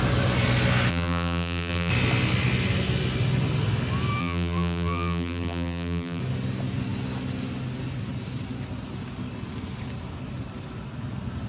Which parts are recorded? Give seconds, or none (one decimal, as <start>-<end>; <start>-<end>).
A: 0.0-0.9; 1.9-4.2; 6.2-11.5